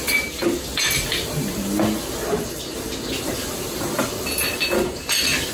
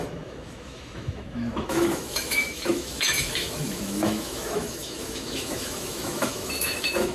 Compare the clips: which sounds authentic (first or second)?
first